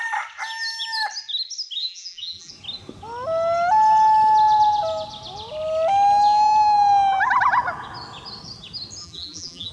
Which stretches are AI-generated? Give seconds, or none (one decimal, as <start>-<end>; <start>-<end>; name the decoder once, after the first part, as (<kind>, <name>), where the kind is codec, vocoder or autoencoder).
1.8-2.5 (vocoder, BigVGAN v2); 9.0-9.7